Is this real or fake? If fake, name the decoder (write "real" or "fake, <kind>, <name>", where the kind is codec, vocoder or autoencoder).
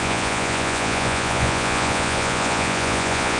fake, vocoder, Vocos